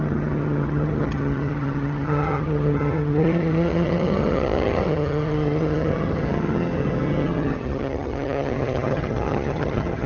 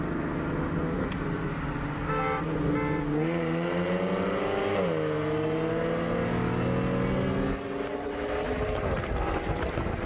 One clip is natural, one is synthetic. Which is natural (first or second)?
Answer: second